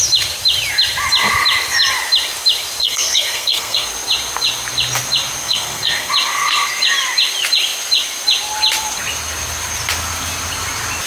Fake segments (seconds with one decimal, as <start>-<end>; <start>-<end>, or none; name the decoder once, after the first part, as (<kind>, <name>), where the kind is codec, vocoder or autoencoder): 2.8-3.9 (codec, SNAC); 5.4-6.1